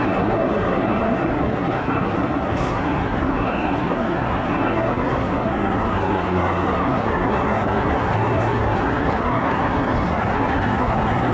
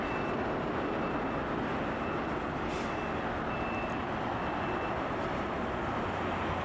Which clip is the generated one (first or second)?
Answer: first